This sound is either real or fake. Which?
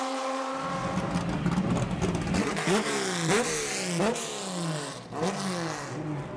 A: real